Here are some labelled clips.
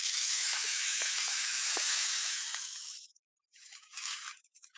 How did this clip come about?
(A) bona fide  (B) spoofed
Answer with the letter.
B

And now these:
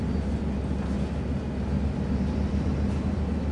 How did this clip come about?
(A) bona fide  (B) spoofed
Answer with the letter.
A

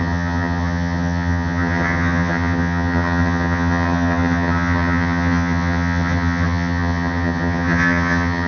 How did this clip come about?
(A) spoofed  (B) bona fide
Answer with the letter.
A